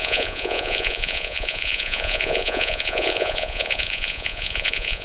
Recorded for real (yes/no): no